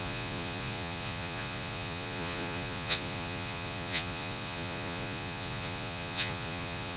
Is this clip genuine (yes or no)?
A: no